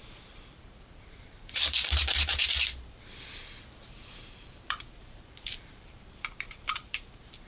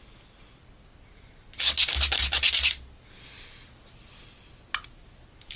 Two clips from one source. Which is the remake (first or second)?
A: first